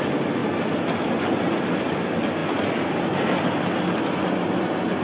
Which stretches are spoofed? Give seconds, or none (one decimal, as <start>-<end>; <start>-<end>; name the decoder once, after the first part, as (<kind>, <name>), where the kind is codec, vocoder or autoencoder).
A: none